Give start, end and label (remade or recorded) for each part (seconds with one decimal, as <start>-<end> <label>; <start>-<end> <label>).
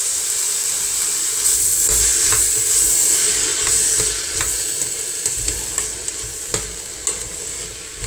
0.0-8.1 recorded